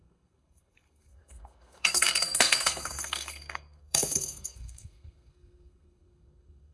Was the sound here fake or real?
fake